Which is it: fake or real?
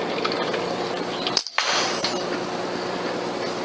real